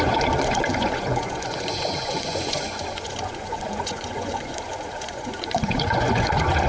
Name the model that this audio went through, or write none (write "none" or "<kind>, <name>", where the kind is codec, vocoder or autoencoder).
vocoder, Vocos